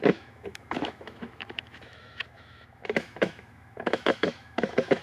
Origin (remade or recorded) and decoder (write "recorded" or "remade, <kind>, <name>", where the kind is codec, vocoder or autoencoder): remade, autoencoder, DAC-VAE